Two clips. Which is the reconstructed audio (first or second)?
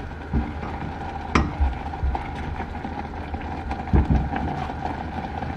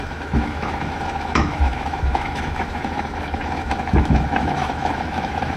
second